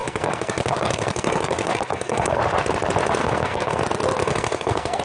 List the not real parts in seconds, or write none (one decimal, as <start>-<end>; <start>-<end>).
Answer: 0.0-2.4; 3.2-3.8; 4.2-5.0